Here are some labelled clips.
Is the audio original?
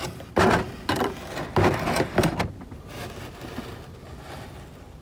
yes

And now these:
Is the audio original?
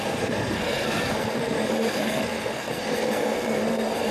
no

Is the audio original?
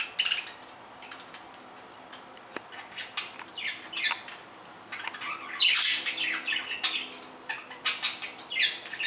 yes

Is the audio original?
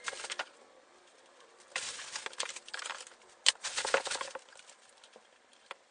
yes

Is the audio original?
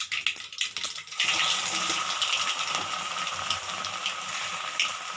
yes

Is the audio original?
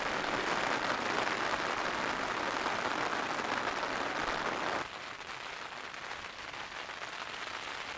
yes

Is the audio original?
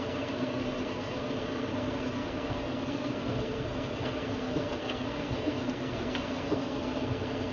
no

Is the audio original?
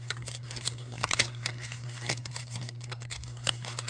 no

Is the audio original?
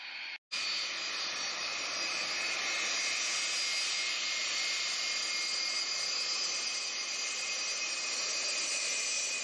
yes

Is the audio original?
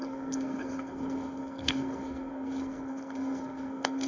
no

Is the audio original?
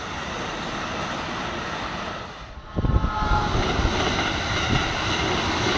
yes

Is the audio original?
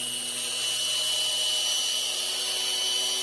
yes